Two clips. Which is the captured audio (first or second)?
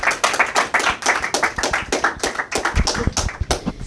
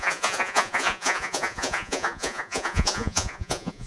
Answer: first